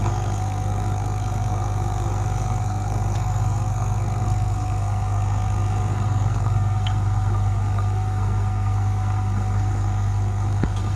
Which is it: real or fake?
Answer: fake